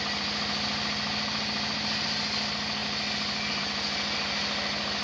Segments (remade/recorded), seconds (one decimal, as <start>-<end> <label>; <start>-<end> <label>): 0.0-5.0 recorded